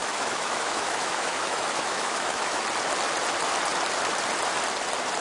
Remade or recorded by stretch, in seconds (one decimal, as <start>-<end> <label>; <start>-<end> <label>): 0.0-2.6 remade; 2.6-5.2 recorded